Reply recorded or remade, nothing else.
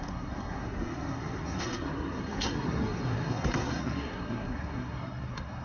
remade